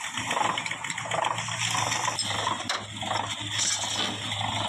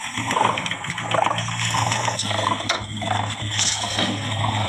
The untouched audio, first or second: first